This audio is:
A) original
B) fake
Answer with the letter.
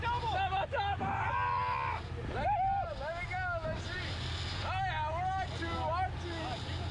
A